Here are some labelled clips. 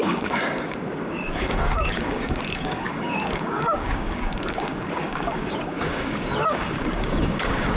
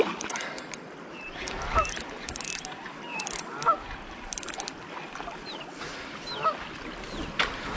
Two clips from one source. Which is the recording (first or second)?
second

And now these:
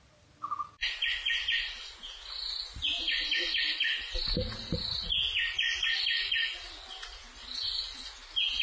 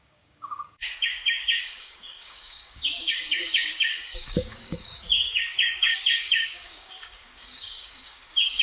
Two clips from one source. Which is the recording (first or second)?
first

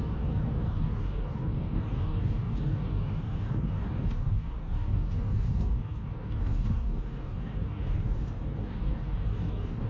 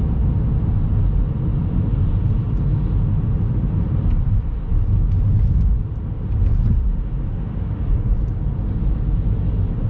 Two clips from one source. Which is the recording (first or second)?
second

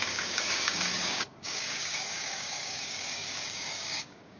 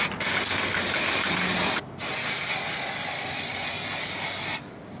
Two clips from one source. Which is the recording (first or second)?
second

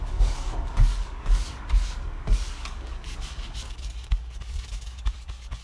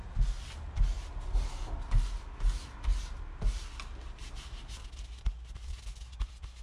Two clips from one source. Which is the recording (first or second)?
second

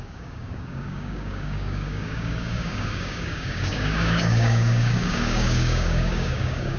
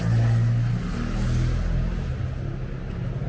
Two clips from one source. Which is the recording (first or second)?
second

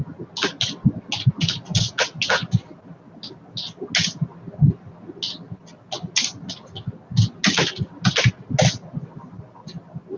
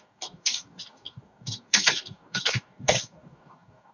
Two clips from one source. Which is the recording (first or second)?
first